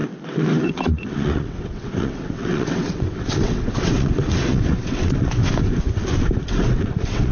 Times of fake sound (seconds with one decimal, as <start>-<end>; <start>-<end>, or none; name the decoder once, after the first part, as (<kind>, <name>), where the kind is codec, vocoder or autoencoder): 0.0-5.4 (vocoder, WaveNeXt); 6.5-7.3